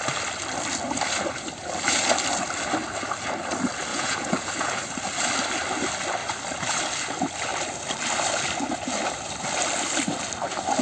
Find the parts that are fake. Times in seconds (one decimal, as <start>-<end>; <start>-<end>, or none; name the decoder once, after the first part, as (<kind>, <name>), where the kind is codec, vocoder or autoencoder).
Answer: 3.9-4.8 (vocoder, Vocos)